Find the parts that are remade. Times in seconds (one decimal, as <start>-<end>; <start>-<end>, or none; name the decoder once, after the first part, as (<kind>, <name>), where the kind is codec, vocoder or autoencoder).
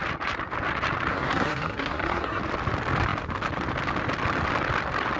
1.1-2.4 (codec, SNAC)